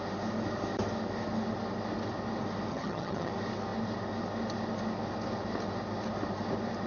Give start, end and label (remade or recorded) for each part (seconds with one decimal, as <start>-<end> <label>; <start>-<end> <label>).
0.0-2.7 recorded; 2.7-3.3 remade; 3.3-6.9 recorded